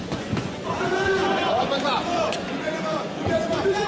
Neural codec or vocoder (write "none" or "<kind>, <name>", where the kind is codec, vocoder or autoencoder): vocoder, Vocos